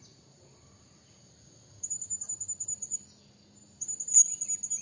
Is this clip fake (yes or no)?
no